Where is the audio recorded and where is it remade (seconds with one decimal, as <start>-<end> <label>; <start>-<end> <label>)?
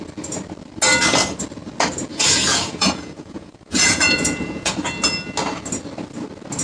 0.0-2.1 recorded; 2.1-4.7 remade; 4.7-6.6 recorded